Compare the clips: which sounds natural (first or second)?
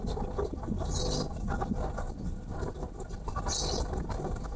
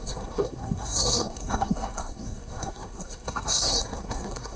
first